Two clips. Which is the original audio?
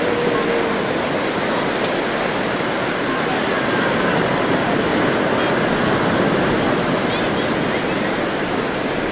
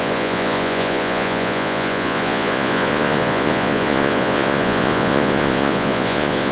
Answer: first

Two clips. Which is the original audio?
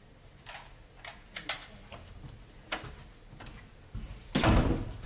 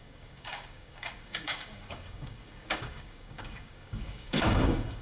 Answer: first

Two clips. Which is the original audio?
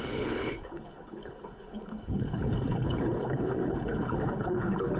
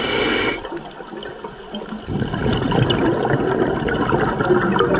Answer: second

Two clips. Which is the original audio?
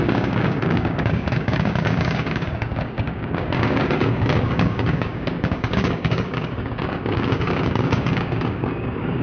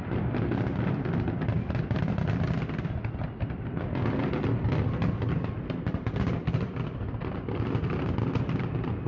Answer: second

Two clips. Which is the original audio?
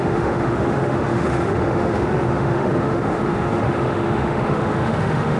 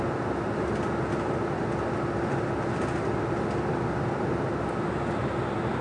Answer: second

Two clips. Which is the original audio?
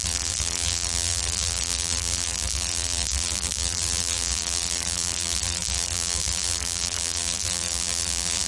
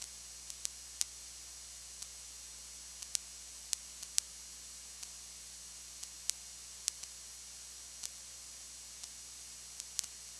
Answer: second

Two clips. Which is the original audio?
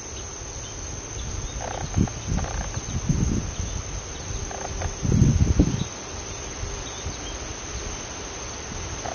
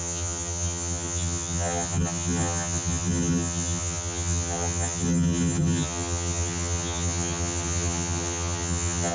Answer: first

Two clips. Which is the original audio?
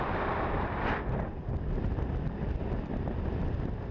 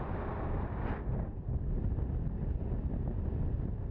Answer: second